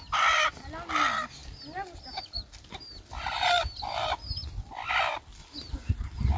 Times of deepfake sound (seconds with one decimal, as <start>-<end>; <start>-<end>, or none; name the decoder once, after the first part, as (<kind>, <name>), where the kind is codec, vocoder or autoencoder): none